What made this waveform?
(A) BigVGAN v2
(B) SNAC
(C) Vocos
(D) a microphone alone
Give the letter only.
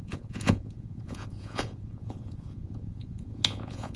C